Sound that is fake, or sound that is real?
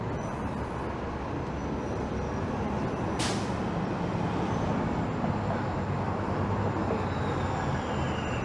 real